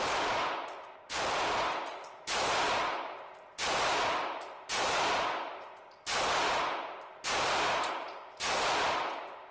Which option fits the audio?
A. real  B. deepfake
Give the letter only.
A